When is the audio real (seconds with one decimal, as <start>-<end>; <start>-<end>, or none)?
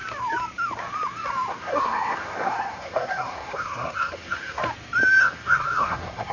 0.0-1.5; 4.6-5.2